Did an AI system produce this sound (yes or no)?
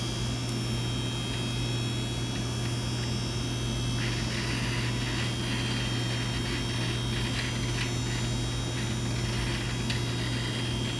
no